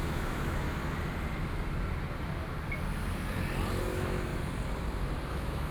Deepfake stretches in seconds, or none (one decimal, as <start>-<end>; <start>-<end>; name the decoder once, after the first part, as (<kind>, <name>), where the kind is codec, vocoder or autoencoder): 0.0-0.8 (autoencoder, DAC-VAE); 3.8-4.3; 5.3-5.7